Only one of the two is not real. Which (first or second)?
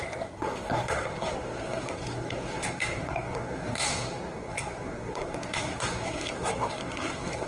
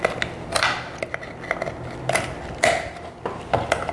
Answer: first